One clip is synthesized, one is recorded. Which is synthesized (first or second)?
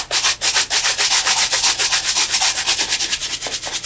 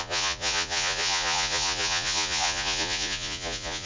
second